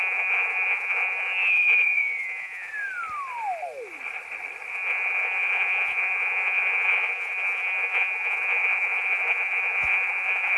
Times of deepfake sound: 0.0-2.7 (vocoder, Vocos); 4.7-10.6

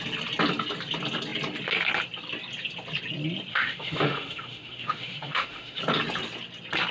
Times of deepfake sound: 3.5-5.8 (autoencoder, DAC-VAE)

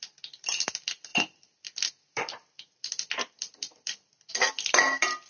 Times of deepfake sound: 0.0-5.3 (vocoder, BigVGAN v2)

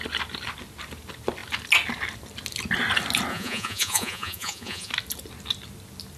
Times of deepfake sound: 3.3-4.9 (vocoder, Vocos)

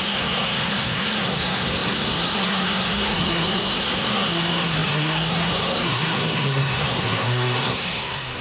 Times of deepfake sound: 0.0-8.4 (codec, SNAC)

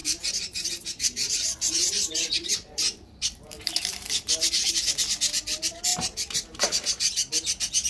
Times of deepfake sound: 0.0-4.7 (vocoder, BigVGAN v2); 5.9-6.7

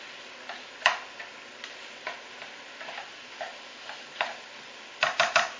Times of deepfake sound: none